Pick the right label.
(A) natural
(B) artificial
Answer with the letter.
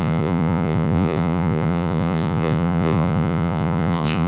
B